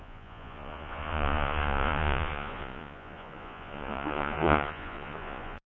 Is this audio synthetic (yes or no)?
yes